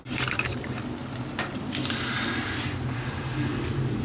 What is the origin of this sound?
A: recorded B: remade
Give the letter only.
A